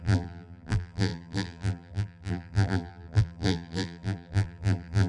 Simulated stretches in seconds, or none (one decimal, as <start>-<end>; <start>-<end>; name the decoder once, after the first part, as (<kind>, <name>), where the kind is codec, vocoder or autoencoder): 0.0-5.1 (vocoder, BigVGAN v2)